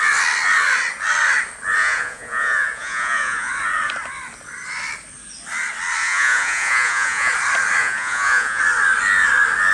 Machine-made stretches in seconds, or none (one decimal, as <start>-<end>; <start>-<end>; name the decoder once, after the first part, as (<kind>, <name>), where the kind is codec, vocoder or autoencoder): 1.8-3.5 (vocoder, Vocos); 6.0-7.3; 7.8-8.6